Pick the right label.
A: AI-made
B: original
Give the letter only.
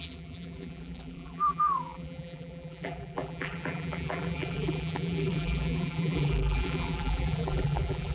A